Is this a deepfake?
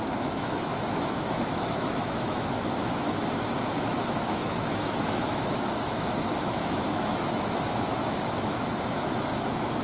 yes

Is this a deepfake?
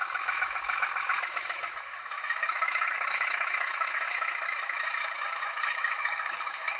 yes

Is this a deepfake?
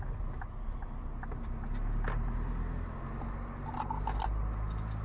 no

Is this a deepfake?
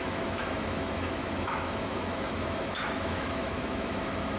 yes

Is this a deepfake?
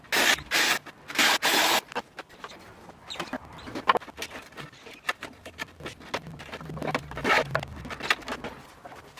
no